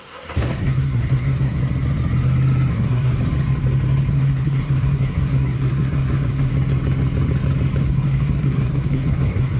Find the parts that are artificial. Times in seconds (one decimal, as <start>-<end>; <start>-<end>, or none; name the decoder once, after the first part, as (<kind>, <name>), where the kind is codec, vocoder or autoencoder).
0.0-1.6 (codec, SNAC); 2.7-3.1; 4.1-6.5; 7.8-9.6